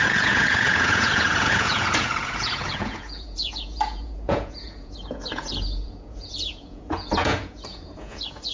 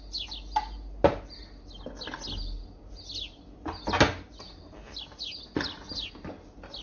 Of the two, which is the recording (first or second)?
second